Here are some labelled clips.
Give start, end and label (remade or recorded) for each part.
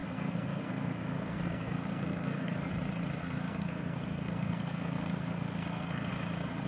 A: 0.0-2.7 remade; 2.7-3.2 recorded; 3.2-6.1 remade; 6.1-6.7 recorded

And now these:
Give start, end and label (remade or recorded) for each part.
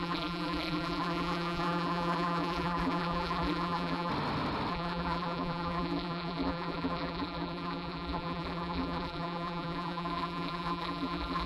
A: 0.0-4.1 remade; 4.1-4.7 recorded; 4.7-11.5 remade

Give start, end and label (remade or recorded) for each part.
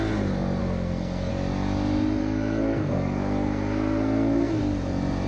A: 0.0-0.6 recorded; 0.6-1.3 remade; 1.3-2.2 recorded; 2.2-4.6 remade; 4.6-5.3 recorded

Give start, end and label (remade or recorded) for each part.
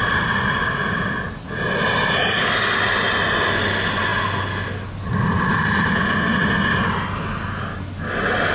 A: 0.0-8.5 recorded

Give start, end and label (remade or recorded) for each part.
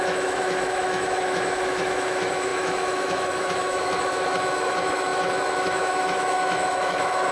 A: 0.0-7.3 remade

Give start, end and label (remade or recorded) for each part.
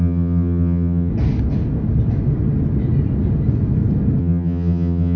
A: 0.0-1.1 remade; 1.1-4.2 recorded; 4.2-5.2 remade